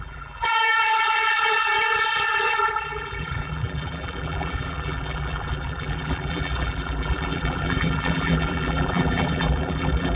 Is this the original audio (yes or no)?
no